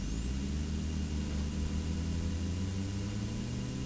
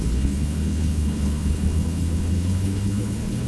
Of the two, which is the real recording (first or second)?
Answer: first